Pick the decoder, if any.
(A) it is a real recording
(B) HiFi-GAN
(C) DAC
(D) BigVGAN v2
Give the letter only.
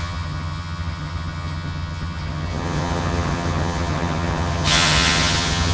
B